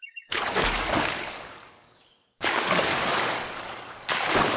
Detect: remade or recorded remade